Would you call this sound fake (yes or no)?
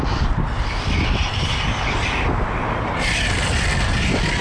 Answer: no